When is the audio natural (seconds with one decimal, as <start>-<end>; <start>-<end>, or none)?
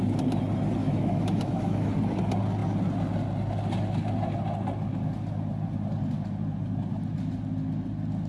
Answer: 0.0-0.8; 1.9-8.3